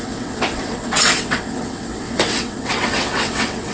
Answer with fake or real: fake